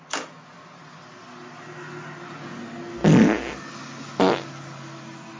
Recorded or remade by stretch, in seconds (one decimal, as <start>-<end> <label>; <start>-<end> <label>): 0.0-5.4 recorded